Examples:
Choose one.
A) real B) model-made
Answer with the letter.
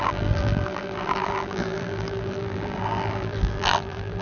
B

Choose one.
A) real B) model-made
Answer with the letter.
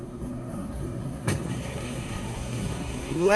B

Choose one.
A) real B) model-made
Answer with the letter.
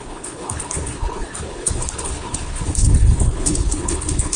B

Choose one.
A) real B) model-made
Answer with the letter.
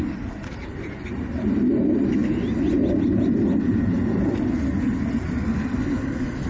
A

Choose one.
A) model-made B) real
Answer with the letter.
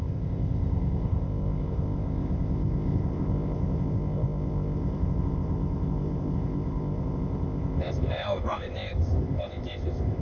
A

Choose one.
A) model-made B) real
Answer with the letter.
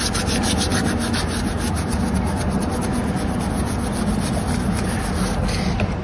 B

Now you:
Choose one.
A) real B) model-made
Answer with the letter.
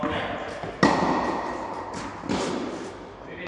A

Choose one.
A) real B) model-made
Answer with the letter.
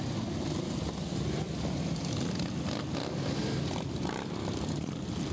A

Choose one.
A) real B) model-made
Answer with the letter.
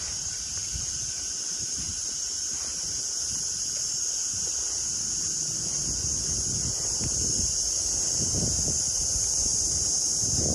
A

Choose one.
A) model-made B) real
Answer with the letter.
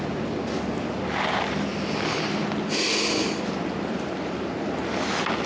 B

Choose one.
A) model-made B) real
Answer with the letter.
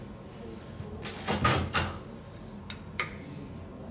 B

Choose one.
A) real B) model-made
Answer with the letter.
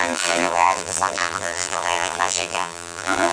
B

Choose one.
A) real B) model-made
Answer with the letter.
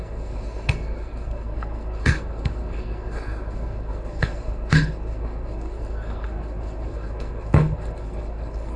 B